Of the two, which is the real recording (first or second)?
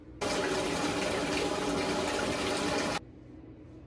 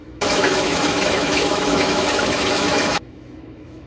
first